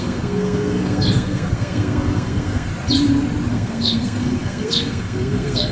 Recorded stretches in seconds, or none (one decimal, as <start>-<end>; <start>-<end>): 2.7-3.5